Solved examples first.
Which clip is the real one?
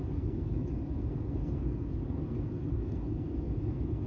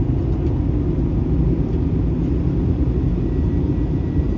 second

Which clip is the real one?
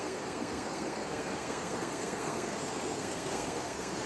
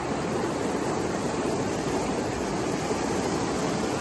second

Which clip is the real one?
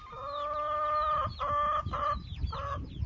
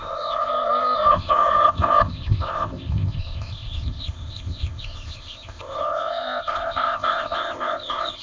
first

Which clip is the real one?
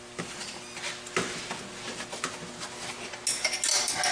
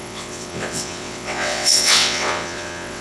first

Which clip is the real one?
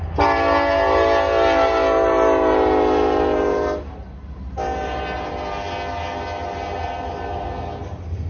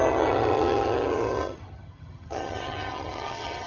first